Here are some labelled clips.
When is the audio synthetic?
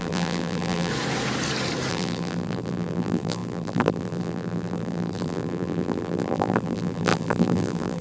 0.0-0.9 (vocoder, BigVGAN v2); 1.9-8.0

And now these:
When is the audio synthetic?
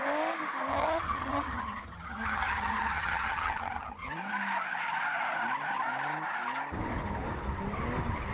0.7-4.1 (vocoder, HiFi-GAN)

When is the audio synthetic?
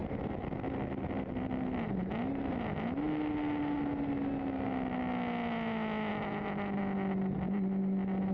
none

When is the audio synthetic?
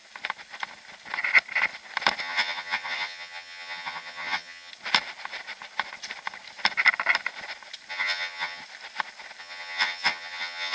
2.2-4.7 (vocoder, HiFi-GAN); 7.9-8.6; 9.4-10.7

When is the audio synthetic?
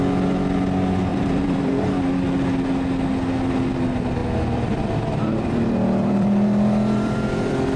1.1-2.0 (vocoder, BigVGAN v2); 4.2-7.8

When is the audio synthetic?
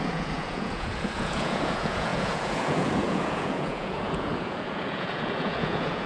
0.0-6.1 (vocoder, Vocos)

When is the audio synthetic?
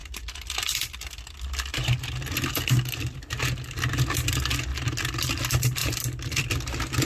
4.7-5.2 (vocoder, BigVGAN v2); 5.8-6.5